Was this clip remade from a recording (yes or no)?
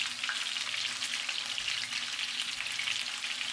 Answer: no